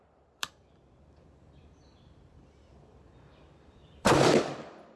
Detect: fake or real fake